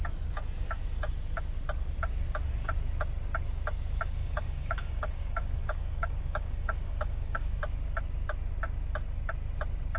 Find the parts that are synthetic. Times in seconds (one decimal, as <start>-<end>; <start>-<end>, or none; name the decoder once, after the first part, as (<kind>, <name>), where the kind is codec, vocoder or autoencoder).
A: 4.2-7.6 (codec, DAC)